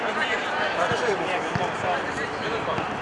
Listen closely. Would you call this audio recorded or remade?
recorded